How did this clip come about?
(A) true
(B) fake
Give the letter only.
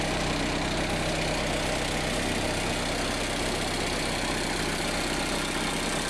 A